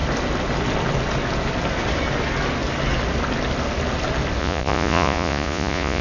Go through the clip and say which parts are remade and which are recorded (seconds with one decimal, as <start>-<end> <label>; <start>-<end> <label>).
0.0-4.4 recorded; 4.4-6.0 remade